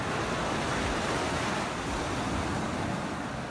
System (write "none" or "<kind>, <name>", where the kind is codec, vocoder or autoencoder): none